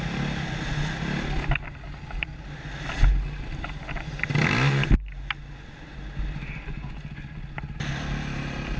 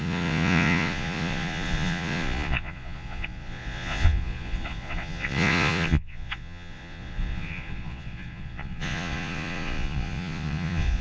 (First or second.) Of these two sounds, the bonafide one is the first